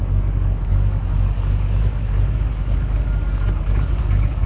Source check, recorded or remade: remade